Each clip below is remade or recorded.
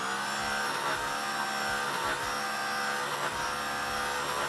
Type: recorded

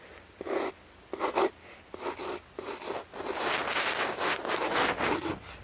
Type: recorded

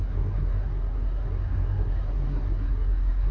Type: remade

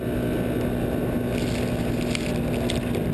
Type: recorded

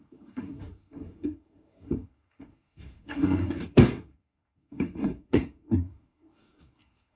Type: remade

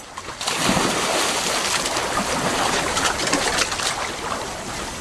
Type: recorded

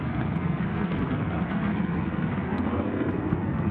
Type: remade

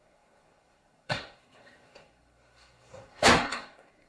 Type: remade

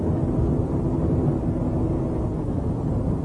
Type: recorded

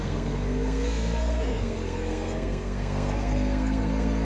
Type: remade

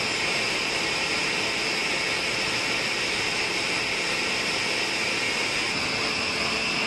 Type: recorded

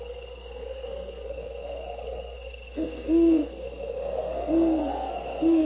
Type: remade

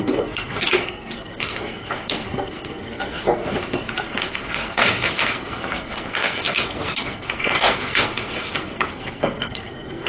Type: remade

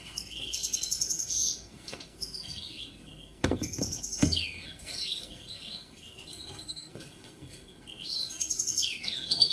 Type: remade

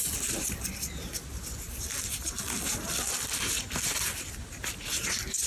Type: recorded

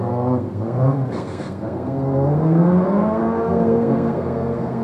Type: remade